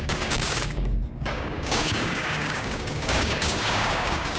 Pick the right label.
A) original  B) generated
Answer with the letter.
B